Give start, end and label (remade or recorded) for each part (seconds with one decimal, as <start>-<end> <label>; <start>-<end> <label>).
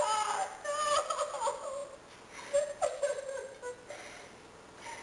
0.0-5.0 recorded